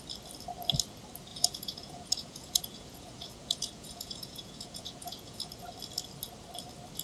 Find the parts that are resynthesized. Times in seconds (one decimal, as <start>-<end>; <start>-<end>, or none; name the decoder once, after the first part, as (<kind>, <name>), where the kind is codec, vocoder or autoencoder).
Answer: 1.3-5.5 (vocoder, Vocos)